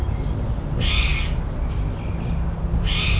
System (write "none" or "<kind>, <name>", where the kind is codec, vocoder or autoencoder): none